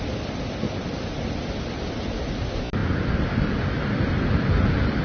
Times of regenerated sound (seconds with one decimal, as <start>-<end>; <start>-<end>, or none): none